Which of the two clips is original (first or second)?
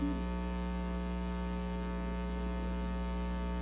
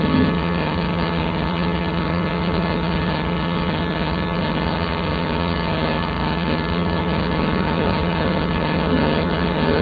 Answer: first